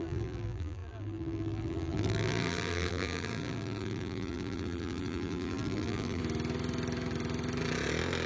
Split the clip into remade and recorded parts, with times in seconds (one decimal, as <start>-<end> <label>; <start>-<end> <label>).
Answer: 0.0-6.2 remade; 6.2-8.3 recorded